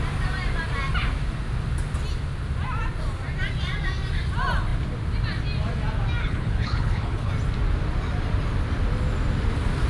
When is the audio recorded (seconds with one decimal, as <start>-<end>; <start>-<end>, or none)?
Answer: 0.0-6.2; 7.3-9.9